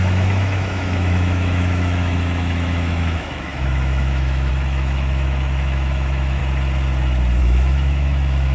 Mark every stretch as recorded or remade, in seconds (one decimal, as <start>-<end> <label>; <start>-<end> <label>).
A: 0.0-6.4 remade; 6.4-7.4 recorded; 7.4-8.5 remade